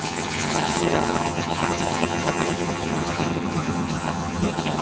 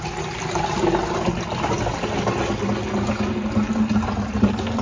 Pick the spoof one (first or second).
first